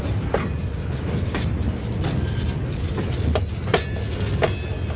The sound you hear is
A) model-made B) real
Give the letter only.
B